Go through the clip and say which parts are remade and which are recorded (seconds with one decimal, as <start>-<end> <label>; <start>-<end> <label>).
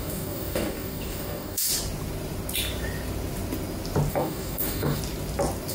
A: 0.0-1.7 remade; 1.7-4.1 recorded; 4.1-5.0 remade; 5.0-5.7 recorded